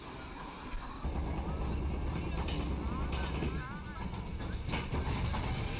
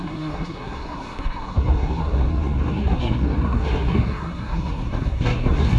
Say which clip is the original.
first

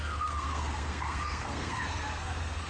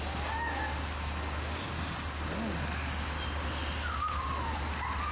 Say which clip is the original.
second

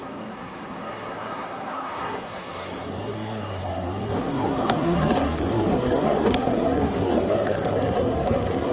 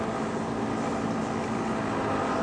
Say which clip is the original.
second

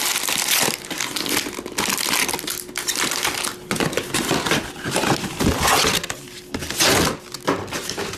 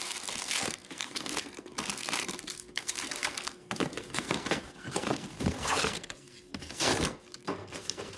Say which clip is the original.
first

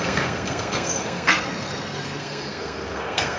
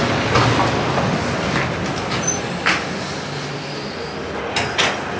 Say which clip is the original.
second